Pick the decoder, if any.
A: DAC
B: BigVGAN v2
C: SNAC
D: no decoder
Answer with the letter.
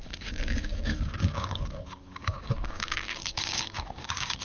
A